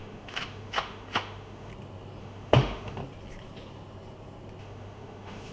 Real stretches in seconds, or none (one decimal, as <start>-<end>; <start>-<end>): 1.7-2.2; 3.0-4.6